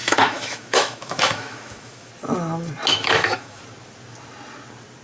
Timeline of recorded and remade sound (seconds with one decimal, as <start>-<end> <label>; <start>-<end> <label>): 0.0-2.1 remade; 2.1-2.9 recorded; 2.9-3.6 remade; 3.6-5.0 recorded